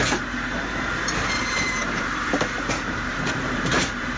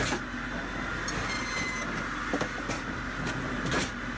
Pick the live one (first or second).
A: second